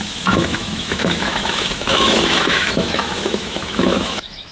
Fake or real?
fake